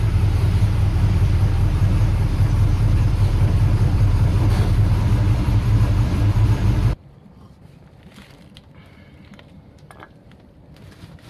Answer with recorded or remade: remade